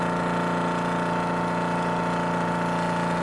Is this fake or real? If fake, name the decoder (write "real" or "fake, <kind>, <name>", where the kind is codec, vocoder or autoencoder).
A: real